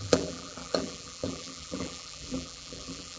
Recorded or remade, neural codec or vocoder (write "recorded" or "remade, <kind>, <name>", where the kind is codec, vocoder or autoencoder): remade, vocoder, BigVGAN v2